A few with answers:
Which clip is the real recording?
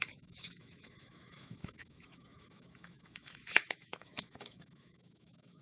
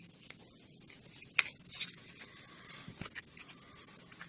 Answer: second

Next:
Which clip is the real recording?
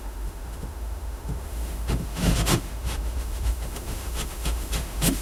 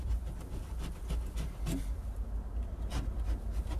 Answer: second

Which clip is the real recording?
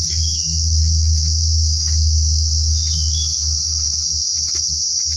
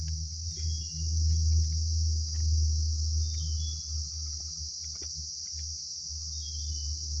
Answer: second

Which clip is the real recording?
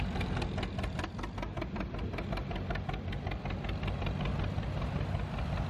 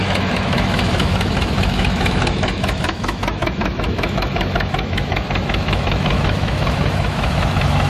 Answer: first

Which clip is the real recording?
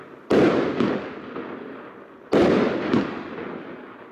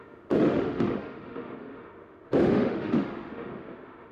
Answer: first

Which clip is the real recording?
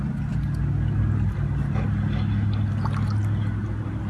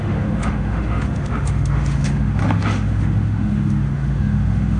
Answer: first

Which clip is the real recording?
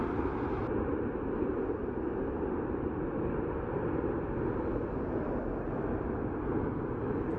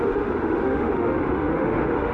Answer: first